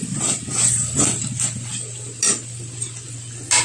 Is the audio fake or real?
real